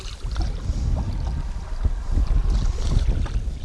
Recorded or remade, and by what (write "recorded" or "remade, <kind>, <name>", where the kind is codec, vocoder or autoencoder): recorded